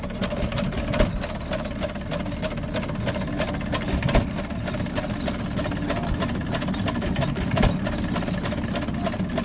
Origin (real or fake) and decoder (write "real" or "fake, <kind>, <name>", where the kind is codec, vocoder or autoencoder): real